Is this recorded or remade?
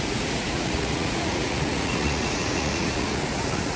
remade